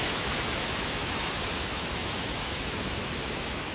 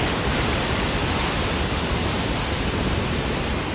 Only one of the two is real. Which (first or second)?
second